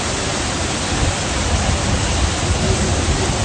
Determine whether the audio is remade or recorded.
recorded